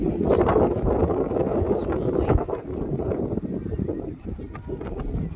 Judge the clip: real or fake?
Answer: real